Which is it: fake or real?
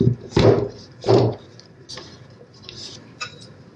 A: fake